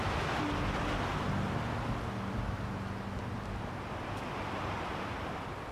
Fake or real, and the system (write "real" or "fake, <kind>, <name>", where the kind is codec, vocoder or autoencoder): real